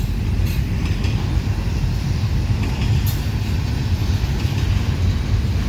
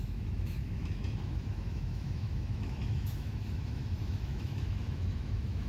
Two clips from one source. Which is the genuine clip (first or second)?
first